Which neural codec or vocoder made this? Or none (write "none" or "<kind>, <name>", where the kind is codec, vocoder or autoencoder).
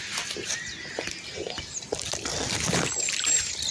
none